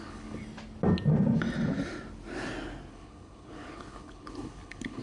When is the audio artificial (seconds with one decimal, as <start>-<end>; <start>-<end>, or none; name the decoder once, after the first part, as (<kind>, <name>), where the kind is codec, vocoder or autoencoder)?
0.0-0.4 (codec, HILCodec); 2.9-5.0